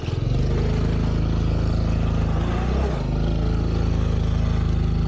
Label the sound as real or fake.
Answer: real